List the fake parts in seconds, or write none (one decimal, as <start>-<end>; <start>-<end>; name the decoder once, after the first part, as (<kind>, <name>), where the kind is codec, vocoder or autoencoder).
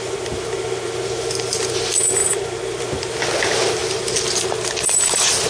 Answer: none